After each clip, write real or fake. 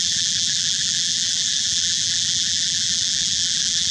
fake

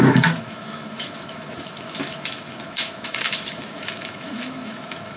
fake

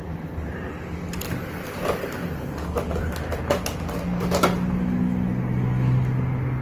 real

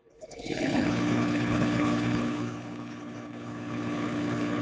fake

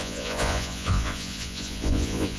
fake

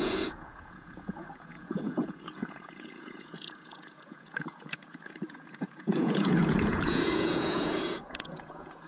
fake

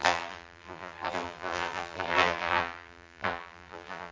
fake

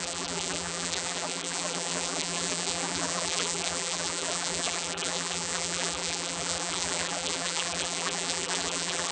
fake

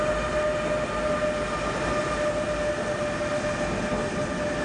real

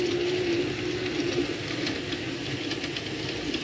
real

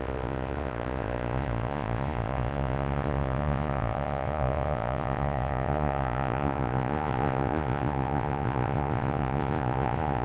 fake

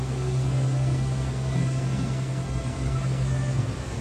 fake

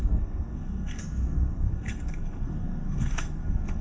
fake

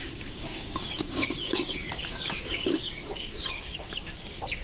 fake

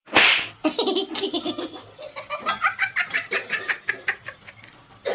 fake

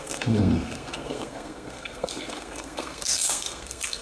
fake